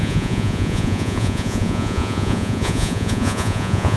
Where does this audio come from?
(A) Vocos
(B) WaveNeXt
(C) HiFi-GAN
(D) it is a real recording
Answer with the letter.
A